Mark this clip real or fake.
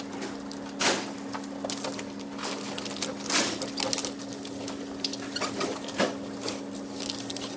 real